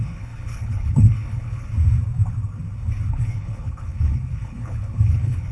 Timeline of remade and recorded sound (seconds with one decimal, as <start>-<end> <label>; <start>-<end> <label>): 0.0-1.7 remade; 1.7-3.1 recorded; 3.1-5.5 remade